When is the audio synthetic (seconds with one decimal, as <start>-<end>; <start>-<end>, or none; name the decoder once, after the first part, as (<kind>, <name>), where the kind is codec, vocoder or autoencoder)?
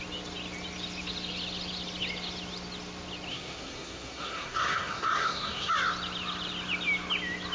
3.3-5.7 (codec, SNAC)